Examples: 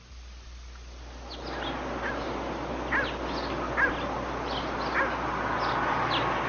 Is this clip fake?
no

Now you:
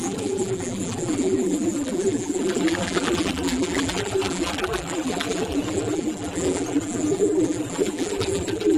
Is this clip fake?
yes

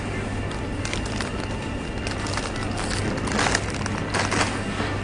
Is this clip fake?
no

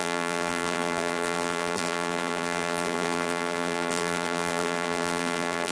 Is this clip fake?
yes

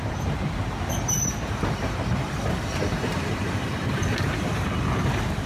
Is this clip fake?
yes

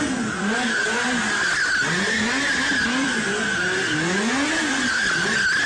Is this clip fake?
no